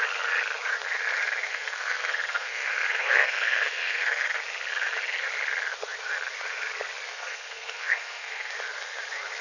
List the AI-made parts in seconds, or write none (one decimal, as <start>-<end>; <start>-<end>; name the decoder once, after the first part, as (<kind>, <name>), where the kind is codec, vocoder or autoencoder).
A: 1.5-4.4 (codec, SNAC); 7.1-8.5